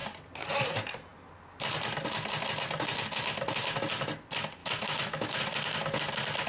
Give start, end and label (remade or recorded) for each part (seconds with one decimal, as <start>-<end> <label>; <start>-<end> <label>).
0.0-4.6 recorded; 4.6-5.4 remade; 5.4-6.5 recorded